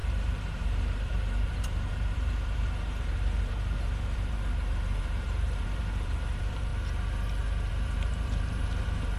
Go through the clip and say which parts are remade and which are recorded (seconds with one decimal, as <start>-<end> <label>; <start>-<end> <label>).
0.0-6.7 remade; 6.7-7.7 recorded; 7.7-9.2 remade

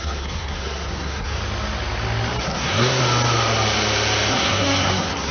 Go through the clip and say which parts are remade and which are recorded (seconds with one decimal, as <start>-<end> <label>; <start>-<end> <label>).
0.0-1.4 remade; 1.4-2.4 recorded; 2.4-3.0 remade; 3.0-4.3 recorded; 4.3-5.3 remade